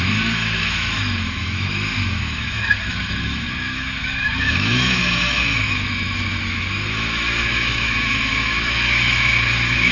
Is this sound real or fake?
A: fake